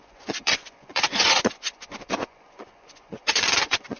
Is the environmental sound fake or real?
fake